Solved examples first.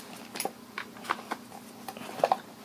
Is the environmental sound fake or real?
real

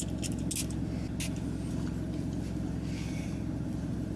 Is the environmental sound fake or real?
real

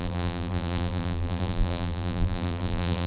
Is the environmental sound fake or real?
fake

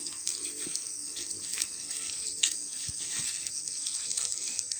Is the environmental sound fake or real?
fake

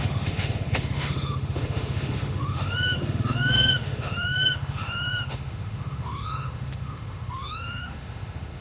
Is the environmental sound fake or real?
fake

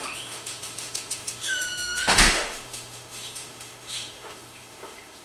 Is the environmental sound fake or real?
fake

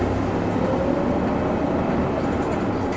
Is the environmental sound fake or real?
real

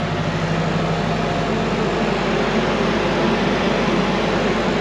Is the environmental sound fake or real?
real